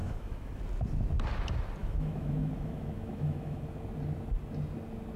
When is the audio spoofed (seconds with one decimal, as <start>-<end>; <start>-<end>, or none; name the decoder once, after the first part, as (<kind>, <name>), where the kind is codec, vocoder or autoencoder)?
0.0-0.6 (autoencoder, DAC-VAE); 1.8-3.6